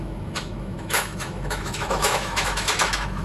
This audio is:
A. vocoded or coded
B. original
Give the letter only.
A